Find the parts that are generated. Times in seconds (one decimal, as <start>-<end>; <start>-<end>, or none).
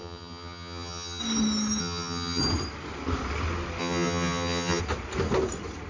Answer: 0.0-1.2; 1.8-2.4; 3.8-4.8